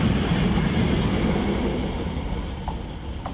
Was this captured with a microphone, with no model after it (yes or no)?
yes